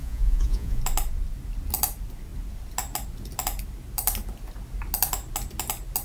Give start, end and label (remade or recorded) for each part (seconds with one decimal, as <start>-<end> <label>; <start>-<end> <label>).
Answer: 0.0-0.8 remade; 0.8-6.0 recorded